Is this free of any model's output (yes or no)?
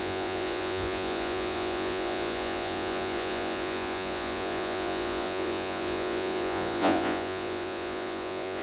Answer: no